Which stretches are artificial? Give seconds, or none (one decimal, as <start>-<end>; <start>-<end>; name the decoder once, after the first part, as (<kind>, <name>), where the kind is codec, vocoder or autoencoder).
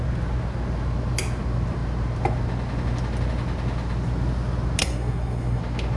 4.8-5.6 (codec, SNAC)